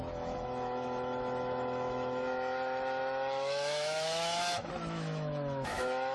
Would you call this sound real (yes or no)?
no